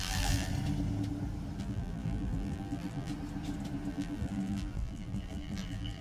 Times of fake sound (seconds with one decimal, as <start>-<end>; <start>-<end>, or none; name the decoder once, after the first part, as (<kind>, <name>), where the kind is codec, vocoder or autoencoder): 0.0-0.5 (vocoder, BigVGAN v2); 1.6-3.1; 3.9-6.0